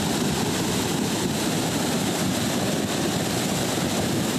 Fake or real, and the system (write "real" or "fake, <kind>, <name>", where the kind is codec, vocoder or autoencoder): real